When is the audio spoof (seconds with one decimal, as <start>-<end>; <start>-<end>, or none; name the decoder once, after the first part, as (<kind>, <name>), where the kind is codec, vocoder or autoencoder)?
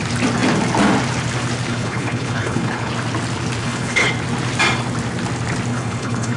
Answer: 1.7-2.9 (codec, HILCodec); 3.6-4.1; 5.7-6.4